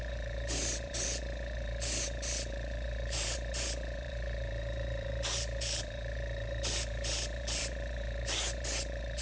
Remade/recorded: remade